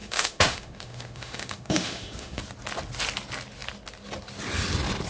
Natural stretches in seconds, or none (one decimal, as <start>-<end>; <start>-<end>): 2.4-5.1